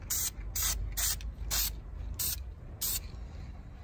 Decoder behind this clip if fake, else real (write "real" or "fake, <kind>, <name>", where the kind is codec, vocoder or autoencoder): real